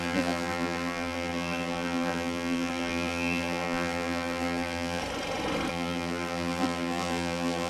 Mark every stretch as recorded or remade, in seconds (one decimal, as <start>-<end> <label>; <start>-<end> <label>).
0.0-5.0 remade; 5.0-5.7 recorded; 5.7-7.7 remade